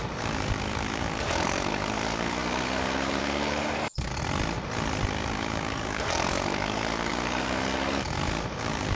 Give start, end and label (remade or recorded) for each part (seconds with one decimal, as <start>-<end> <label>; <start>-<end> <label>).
0.0-4.1 remade; 4.1-5.1 recorded; 5.1-9.0 remade